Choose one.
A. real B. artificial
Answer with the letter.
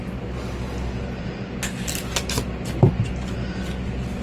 A